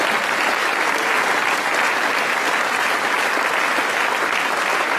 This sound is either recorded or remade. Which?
recorded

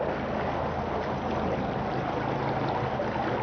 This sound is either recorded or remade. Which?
recorded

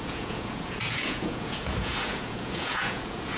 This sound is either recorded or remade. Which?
remade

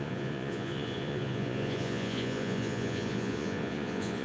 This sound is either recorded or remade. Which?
remade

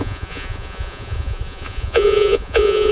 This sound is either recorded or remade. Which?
remade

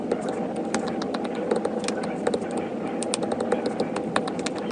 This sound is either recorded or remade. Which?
recorded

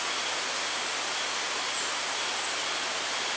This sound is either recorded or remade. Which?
recorded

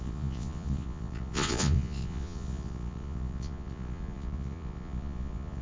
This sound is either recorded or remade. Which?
remade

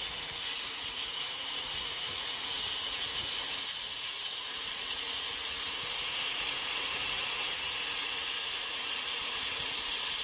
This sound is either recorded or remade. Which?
remade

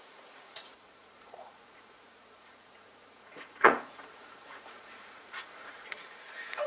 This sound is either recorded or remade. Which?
remade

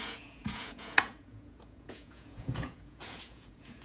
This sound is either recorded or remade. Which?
remade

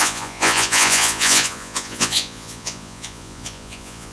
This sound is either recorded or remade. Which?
remade